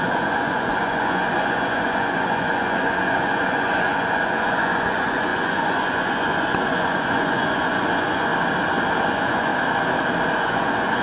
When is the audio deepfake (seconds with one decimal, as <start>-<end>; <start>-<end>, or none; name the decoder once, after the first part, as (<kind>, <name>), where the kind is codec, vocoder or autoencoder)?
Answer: 0.0-8.3 (vocoder, Vocos); 9.1-9.5; 10.4-11.0